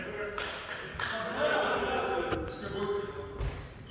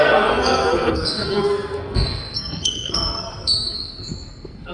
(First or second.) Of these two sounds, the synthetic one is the second